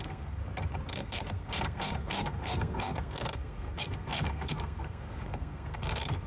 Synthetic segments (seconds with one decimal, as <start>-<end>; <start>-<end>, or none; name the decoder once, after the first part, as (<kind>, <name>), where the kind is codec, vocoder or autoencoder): 0.0-0.4 (codec, SNAC); 0.9-6.3